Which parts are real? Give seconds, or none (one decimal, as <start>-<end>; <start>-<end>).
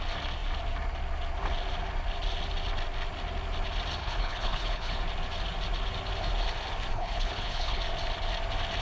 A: 0.0-4.0; 4.9-6.9; 7.8-8.8